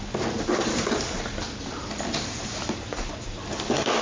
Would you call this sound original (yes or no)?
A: yes